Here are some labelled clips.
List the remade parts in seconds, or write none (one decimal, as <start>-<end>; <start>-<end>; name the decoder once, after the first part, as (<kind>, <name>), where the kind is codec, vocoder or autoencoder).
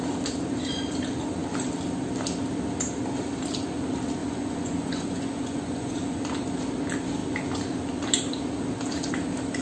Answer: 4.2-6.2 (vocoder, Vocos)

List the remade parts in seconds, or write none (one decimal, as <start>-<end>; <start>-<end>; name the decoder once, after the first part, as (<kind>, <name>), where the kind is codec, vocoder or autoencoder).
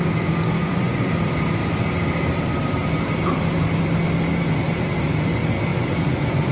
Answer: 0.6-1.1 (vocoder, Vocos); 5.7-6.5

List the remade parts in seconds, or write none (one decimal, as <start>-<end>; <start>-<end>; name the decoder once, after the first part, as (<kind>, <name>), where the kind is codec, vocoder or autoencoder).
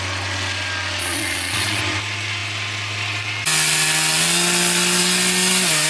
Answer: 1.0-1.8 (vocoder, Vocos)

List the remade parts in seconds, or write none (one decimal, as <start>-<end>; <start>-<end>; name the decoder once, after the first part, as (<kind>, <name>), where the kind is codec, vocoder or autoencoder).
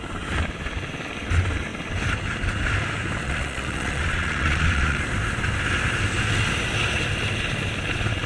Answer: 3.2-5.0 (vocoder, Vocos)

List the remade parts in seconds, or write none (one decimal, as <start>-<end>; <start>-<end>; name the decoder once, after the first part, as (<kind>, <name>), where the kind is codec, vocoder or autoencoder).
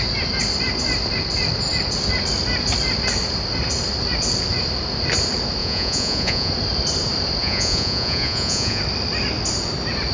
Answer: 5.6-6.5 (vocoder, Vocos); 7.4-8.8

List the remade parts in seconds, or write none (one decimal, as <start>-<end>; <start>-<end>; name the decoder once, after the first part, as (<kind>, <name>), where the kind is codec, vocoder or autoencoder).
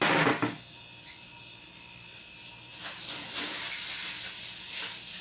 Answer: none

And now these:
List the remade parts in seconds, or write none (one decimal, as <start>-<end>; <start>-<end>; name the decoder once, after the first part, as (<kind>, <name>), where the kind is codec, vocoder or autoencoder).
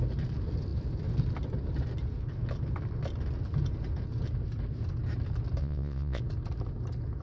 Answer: 5.6-6.2 (vocoder, Vocos)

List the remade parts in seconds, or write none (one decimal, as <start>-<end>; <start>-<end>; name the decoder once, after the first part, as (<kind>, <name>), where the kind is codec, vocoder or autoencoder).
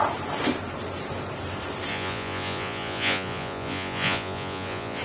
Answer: 1.9-5.0 (vocoder, Vocos)